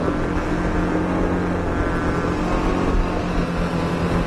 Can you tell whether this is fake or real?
real